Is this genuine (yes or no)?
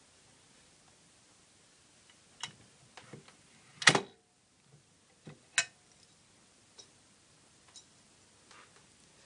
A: yes